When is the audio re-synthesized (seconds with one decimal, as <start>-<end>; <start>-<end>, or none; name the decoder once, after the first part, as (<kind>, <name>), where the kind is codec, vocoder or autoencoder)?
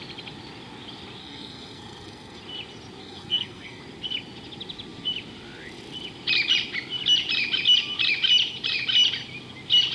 1.2-2.4 (codec, SNAC); 3.0-3.8